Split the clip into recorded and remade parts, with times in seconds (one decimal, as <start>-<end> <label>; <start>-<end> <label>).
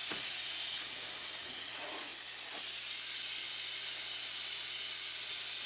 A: 0.0-2.1 remade; 2.1-5.7 recorded